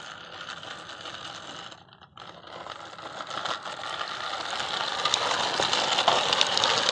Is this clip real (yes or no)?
yes